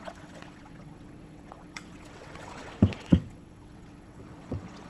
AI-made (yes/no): yes